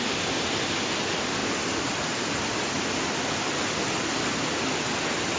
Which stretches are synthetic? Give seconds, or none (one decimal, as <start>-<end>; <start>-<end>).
none